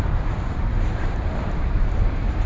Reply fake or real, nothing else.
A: fake